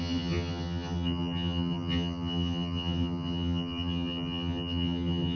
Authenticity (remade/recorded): remade